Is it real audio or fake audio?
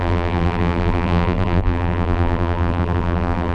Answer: fake